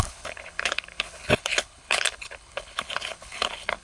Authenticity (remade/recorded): remade